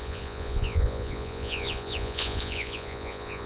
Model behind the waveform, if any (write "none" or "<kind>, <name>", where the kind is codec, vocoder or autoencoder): vocoder, Vocos